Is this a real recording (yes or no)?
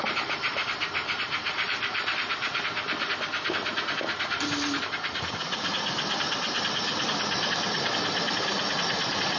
yes